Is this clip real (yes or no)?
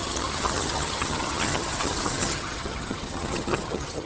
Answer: no